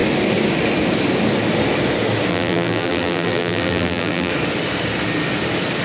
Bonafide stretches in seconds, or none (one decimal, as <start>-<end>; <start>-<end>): 0.0-2.3; 4.3-5.8

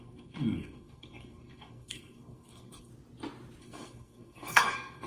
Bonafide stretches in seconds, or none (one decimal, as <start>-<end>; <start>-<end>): 2.9-3.6